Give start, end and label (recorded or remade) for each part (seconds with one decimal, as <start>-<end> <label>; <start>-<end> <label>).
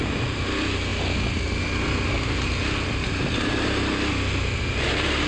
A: 0.0-5.3 recorded